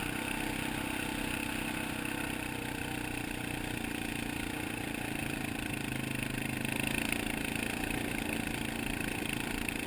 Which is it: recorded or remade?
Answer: recorded